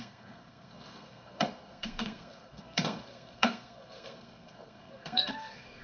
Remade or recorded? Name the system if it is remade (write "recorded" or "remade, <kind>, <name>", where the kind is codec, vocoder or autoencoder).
remade, codec, SNAC